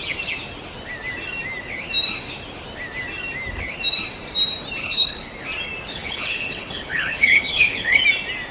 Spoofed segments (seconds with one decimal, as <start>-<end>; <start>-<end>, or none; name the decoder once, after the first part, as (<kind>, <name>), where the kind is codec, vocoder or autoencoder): 4.8-5.3 (codec, HILCodec); 5.9-8.0